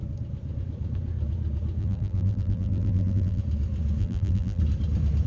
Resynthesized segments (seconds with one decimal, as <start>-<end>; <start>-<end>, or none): 1.8-3.4; 4.0-4.6

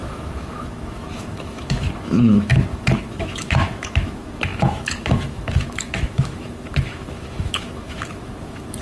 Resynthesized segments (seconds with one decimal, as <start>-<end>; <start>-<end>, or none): 0.0-8.8